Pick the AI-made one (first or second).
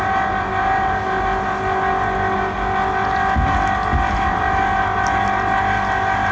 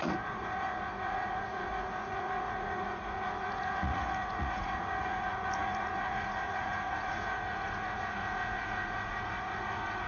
second